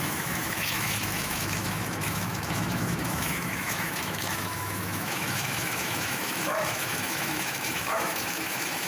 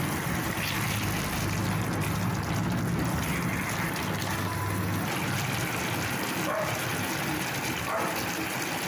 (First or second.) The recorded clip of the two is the second